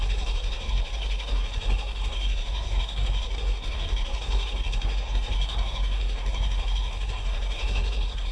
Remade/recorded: remade